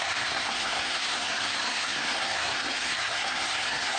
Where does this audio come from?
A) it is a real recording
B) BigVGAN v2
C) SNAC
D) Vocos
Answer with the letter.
C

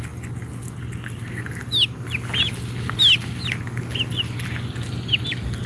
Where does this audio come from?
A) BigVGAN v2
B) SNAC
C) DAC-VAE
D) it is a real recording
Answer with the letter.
D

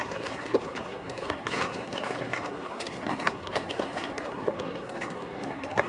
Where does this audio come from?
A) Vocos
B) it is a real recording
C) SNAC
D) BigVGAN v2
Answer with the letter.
C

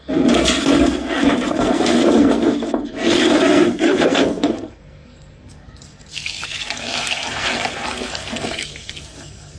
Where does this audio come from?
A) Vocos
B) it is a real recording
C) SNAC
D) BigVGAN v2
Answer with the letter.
C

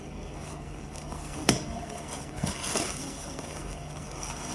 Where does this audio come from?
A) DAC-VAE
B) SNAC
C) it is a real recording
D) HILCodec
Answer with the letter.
B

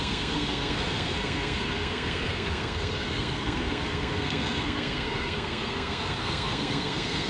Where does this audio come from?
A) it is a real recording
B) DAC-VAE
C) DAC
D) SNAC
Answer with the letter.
D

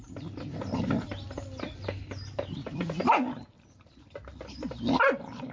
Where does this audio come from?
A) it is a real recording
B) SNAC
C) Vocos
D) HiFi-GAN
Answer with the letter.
A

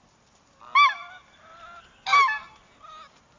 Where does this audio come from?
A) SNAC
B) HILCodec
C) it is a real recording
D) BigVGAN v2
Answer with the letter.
C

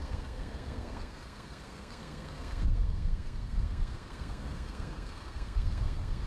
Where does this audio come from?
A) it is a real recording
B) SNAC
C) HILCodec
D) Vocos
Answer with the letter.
B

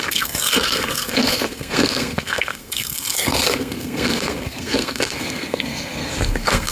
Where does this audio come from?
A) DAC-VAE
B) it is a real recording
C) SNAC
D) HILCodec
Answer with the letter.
C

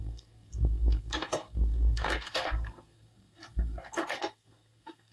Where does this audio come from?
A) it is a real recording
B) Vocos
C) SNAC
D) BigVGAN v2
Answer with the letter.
C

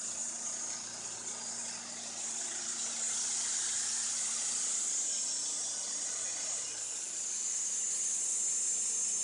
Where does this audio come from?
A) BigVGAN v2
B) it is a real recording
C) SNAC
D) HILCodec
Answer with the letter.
B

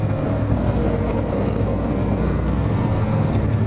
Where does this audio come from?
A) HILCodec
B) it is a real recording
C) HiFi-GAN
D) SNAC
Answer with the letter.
D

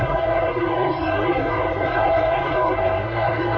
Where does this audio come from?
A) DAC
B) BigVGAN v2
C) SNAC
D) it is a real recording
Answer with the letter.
C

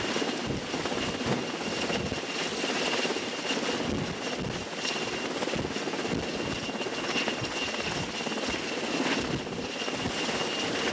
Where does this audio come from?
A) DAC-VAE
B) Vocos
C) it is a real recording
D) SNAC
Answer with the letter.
C